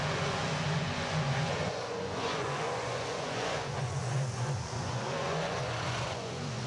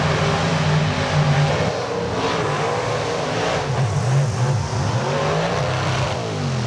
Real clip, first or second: second